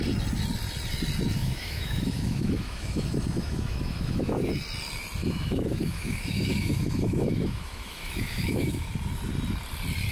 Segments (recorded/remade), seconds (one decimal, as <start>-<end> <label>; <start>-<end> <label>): 0.0-1.4 recorded; 1.4-4.5 remade; 4.5-5.2 recorded; 5.2-8.9 remade; 8.9-10.1 recorded